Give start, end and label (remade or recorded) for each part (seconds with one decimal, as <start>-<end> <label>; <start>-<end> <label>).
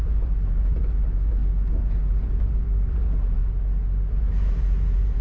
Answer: 0.0-1.4 remade; 1.4-2.4 recorded; 2.4-3.4 remade; 3.4-4.1 recorded; 4.1-5.2 remade